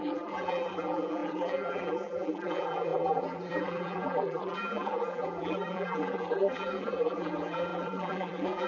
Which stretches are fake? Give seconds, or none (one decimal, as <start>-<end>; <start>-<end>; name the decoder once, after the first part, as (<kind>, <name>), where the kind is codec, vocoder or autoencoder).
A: 0.0-8.7 (vocoder, BigVGAN v2)